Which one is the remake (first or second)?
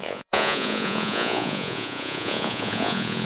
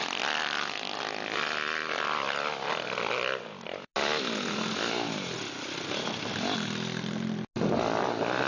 first